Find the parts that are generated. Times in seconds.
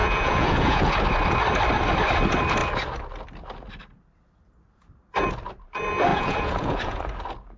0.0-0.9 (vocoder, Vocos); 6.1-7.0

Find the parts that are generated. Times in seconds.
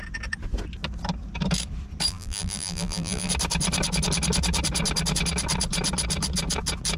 2.1-3.3 (vocoder, BigVGAN v2)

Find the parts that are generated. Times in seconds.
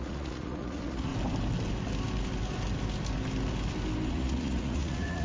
0.0-1.1 (vocoder, Vocos); 4.1-5.2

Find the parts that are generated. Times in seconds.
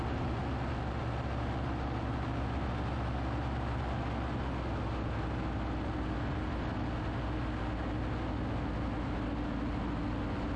none